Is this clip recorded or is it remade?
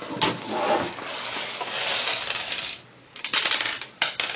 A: recorded